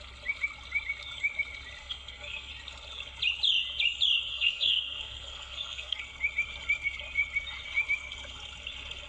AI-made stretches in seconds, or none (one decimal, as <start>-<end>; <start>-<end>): 1.8-2.5; 4.3-6.0

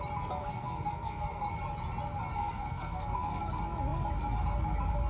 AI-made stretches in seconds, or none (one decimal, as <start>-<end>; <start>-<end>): 0.4-1.5; 2.3-3.4

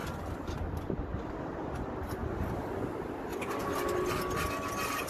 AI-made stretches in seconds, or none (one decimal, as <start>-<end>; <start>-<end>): 0.0-0.6; 1.1-1.6; 2.2-2.7; 3.3-4.1